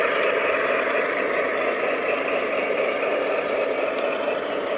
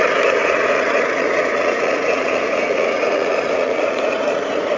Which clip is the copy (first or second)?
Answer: second